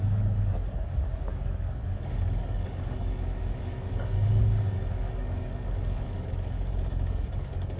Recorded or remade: remade